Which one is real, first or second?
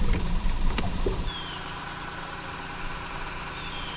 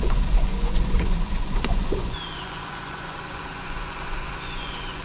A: first